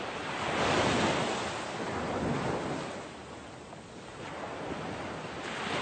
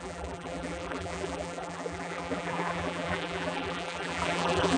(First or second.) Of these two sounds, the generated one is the second